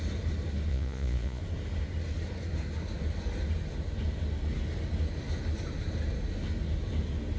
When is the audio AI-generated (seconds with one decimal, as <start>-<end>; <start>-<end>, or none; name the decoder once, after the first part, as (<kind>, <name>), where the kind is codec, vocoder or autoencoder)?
0.7-1.4 (vocoder, Vocos)